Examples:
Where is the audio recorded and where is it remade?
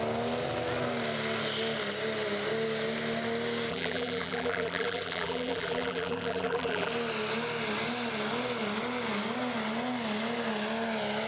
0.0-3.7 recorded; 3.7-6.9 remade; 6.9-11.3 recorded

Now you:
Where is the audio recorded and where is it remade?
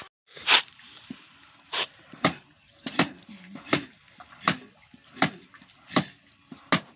0.0-0.4 recorded; 0.4-2.7 remade; 2.7-7.0 recorded